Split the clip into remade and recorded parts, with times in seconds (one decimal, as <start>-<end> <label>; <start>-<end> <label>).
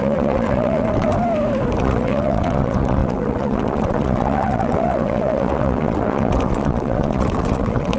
0.0-1.1 remade; 1.1-1.8 recorded; 1.8-8.0 remade